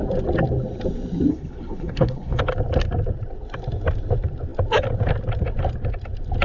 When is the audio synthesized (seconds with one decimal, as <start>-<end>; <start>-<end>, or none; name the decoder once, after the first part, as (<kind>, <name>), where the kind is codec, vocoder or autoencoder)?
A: 1.3-2.4 (codec, HILCodec)